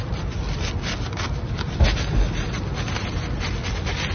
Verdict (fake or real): real